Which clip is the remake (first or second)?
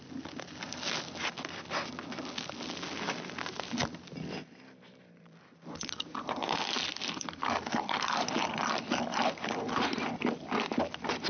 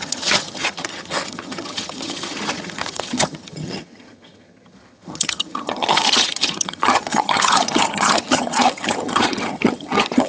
second